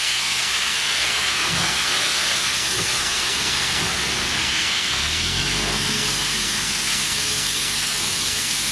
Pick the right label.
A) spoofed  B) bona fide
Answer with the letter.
A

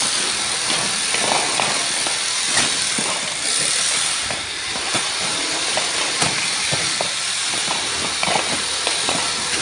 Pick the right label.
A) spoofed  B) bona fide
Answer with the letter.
B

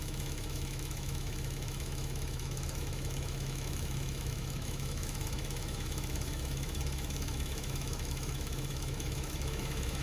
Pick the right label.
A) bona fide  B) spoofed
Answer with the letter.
B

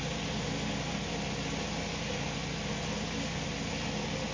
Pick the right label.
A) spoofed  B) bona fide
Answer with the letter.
B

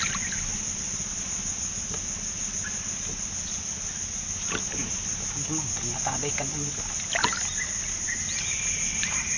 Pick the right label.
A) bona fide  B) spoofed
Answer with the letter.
A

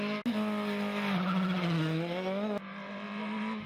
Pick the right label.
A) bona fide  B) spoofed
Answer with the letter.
A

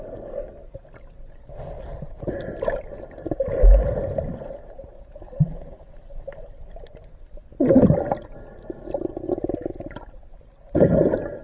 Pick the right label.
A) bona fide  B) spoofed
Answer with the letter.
A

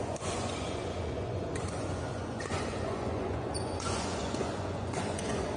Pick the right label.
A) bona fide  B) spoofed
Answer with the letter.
B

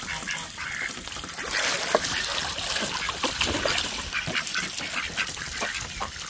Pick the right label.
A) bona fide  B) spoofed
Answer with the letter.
A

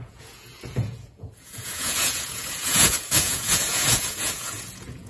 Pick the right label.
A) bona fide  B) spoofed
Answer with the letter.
B